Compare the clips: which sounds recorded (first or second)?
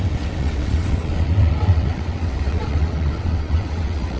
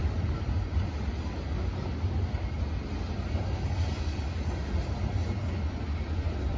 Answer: second